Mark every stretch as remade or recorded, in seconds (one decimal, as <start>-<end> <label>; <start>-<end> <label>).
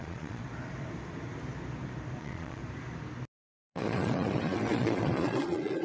0.0-0.4 remade; 0.4-2.2 recorded; 2.2-2.6 remade; 2.6-3.6 recorded; 3.6-5.8 remade